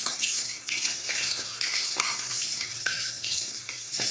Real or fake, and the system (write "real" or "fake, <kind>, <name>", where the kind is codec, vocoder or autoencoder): fake, codec, SNAC